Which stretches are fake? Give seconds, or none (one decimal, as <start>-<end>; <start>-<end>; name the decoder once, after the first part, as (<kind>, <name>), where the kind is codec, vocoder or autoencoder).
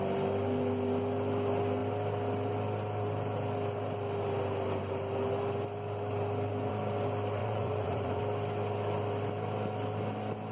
7.4-8.2 (vocoder, Vocos)